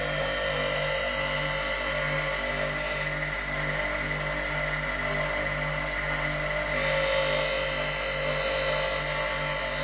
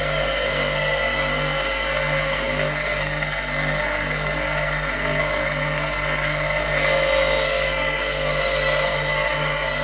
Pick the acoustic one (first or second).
first